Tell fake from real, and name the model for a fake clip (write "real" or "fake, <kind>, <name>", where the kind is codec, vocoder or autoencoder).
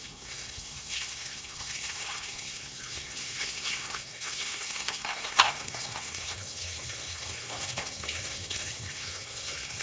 fake, codec, SNAC